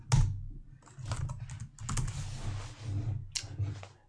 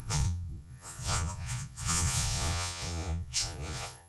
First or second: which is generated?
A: second